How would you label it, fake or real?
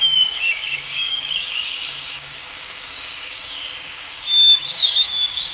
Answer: fake